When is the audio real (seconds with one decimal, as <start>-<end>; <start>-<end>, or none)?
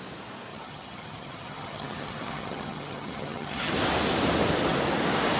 0.0-0.5; 3.7-5.4